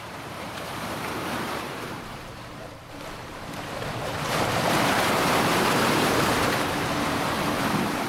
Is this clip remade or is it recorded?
remade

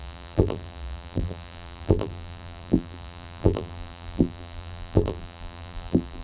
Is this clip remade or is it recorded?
remade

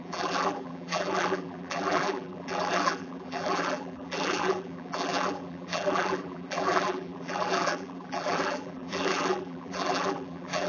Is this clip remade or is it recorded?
remade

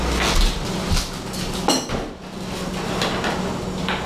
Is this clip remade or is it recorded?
recorded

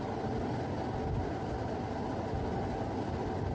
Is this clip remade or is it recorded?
recorded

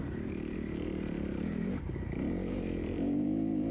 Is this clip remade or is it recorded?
remade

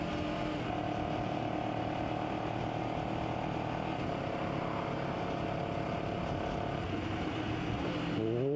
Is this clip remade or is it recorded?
recorded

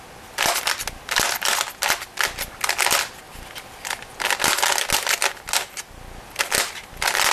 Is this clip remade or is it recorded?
recorded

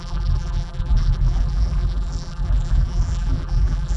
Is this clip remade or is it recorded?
remade